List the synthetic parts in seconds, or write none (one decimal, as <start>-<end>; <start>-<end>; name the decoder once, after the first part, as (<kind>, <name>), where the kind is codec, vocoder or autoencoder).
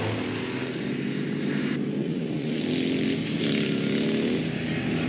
2.0-2.6 (vocoder, Vocos)